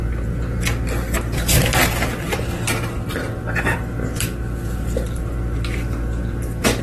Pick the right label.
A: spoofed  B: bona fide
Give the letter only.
B